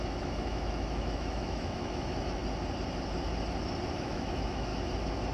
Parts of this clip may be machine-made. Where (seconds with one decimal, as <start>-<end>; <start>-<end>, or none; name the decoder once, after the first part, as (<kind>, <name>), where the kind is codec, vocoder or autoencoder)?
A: 0.0-2.4 (autoencoder, DAC-VAE); 4.0-4.7